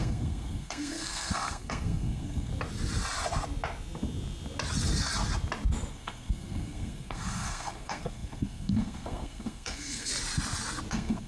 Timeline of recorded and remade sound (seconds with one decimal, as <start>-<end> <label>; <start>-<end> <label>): 0.0-2.5 remade; 2.5-5.9 recorded; 5.9-10.1 remade; 10.1-10.9 recorded; 10.9-11.3 remade